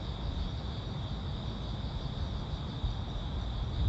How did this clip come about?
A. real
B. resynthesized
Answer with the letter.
A